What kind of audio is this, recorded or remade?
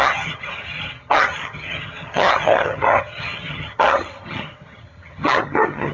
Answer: remade